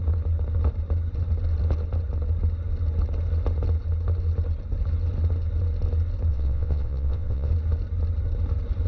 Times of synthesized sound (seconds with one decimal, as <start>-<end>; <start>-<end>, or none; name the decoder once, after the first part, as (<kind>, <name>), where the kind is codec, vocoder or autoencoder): 6.3-7.5 (vocoder, WaveNeXt)